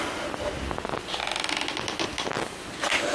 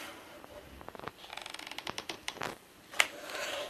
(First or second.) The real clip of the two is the first